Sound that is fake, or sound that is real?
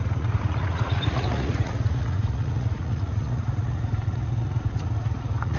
fake